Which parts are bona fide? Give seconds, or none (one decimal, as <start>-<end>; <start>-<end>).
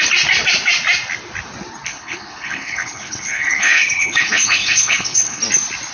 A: 0.0-1.9; 5.4-5.9